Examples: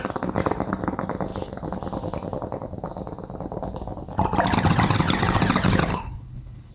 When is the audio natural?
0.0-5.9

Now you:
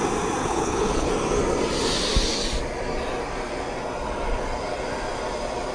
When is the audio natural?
0.0-0.4; 1.1-5.7

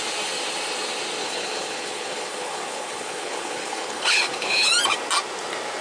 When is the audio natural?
0.0-1.2; 4.7-5.8

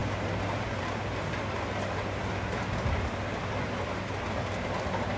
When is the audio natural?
0.0-5.2

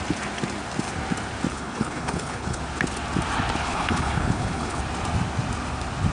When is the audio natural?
0.0-1.5; 2.6-3.6; 4.8-6.1

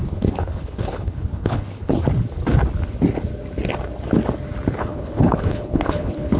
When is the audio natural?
2.0-4.8